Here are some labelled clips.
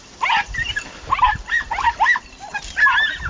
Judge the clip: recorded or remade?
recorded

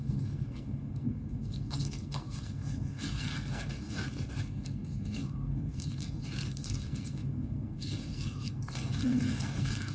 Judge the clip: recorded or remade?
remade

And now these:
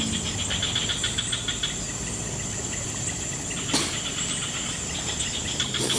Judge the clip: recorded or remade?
recorded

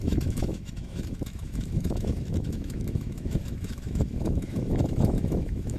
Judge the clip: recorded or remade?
remade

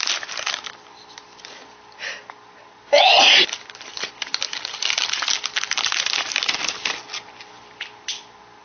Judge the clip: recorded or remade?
recorded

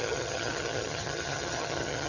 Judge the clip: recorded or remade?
remade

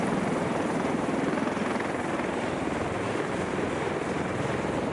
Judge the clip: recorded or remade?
recorded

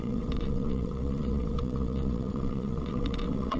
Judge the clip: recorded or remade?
remade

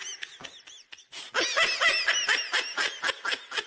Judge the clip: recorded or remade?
recorded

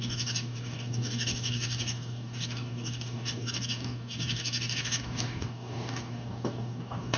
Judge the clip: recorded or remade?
remade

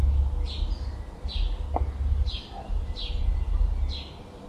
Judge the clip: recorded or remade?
recorded